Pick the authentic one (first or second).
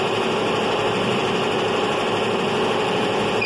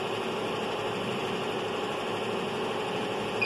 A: second